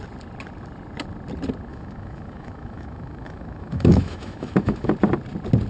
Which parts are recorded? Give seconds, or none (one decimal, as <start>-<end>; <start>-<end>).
0.0-1.7; 4.9-5.7